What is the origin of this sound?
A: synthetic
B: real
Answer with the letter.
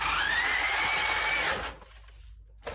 B